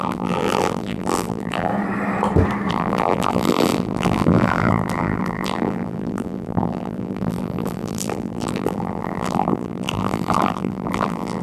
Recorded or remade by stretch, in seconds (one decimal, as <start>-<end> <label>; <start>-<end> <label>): 0.0-1.7 remade; 1.7-2.7 recorded; 2.7-11.4 remade